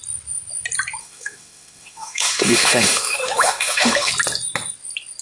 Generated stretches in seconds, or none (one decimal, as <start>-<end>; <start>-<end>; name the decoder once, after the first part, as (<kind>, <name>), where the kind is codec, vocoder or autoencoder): 1.0-4.1 (autoencoder, DAC-VAE)